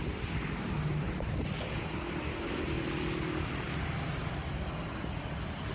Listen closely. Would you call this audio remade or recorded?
recorded